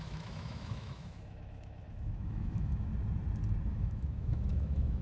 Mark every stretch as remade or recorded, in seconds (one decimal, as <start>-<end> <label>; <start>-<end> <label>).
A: 0.0-2.9 remade; 2.9-3.7 recorded; 3.7-5.0 remade